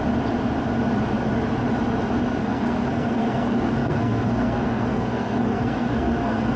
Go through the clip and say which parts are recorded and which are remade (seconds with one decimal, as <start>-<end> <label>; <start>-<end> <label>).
0.0-2.4 recorded; 2.4-6.6 remade